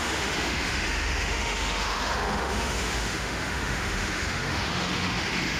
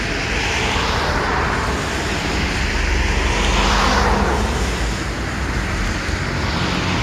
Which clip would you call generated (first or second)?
first